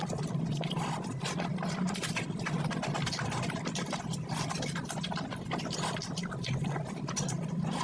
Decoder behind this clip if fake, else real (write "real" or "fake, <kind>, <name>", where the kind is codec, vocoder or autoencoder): real